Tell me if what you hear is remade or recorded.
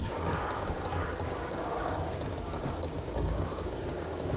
remade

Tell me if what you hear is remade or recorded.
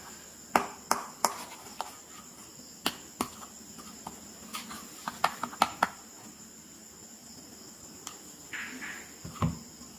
recorded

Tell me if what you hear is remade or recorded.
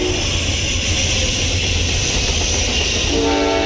recorded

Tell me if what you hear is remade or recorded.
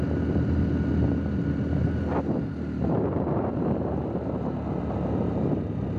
recorded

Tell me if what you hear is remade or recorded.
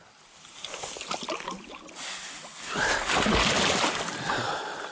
recorded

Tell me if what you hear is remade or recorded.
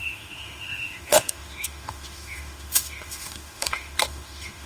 remade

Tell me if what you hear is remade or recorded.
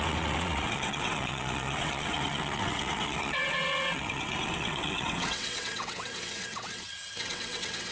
remade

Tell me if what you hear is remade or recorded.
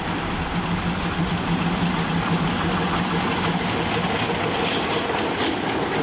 recorded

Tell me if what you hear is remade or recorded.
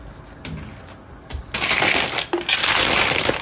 recorded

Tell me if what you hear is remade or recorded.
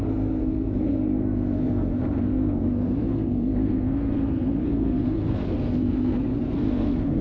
remade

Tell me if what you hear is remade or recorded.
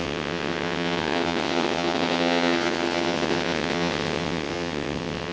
remade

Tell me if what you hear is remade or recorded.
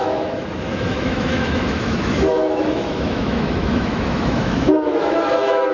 remade